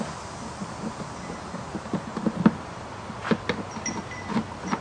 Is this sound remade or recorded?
recorded